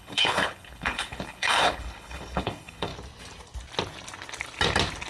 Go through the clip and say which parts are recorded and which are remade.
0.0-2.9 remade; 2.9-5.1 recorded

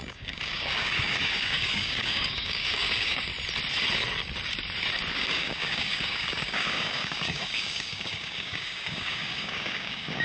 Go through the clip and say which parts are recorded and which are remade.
0.0-3.3 remade; 3.3-5.1 recorded; 5.1-10.2 remade

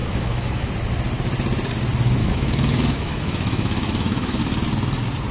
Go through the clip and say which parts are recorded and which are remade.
0.0-0.7 remade; 0.7-2.2 recorded; 2.2-4.4 remade; 4.4-5.3 recorded

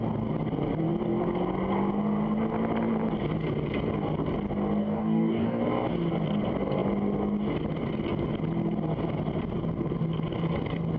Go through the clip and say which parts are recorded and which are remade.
0.0-4.8 recorded; 4.8-5.6 remade; 5.6-11.0 recorded

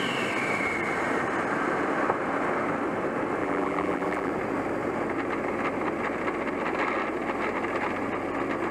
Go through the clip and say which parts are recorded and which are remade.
0.0-3.4 recorded; 3.4-4.3 remade; 4.3-8.7 recorded

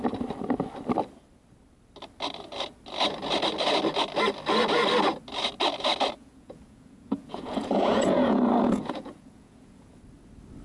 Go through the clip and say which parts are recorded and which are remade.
0.0-6.2 recorded; 6.2-10.0 remade; 10.0-10.6 recorded

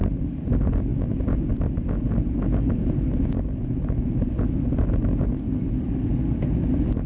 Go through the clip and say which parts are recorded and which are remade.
0.0-7.1 recorded

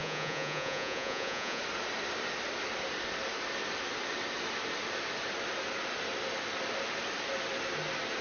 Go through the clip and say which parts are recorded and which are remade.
0.0-1.6 remade; 1.6-8.2 recorded